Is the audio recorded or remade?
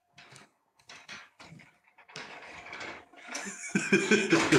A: remade